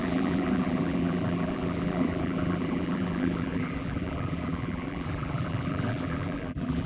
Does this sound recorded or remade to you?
remade